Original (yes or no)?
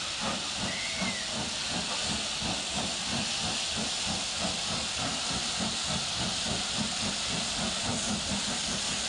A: yes